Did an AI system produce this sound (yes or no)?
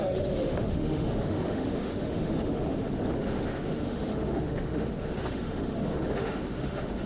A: yes